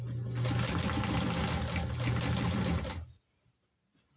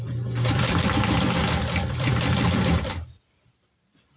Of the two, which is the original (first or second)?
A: first